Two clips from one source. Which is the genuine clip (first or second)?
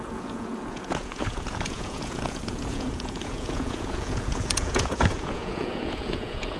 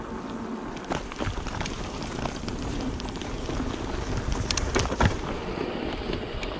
second